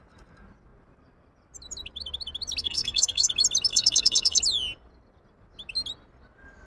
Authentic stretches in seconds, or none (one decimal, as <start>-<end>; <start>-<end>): 0.0-2.6; 3.3-3.7; 4.4-6.7